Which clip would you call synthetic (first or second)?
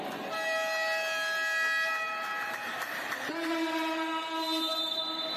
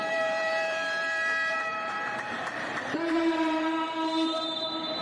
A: second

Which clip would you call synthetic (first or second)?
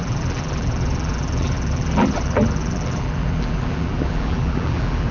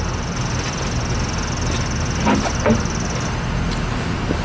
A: first